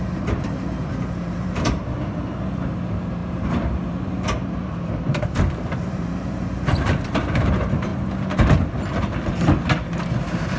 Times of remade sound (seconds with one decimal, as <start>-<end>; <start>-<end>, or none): 0.0-1.8; 2.8-7.9; 10.2-10.6